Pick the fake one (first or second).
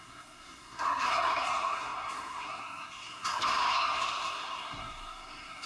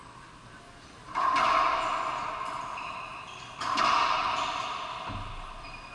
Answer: first